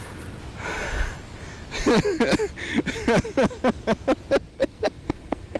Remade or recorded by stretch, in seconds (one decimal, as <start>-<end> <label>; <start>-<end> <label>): 0.0-4.5 recorded; 4.5-5.6 remade